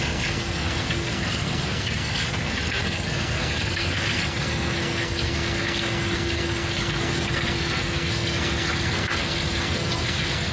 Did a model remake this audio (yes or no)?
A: yes